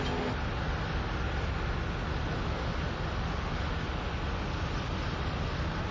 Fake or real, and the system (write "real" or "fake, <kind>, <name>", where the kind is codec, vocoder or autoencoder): real